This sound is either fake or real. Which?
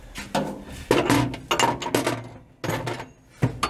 real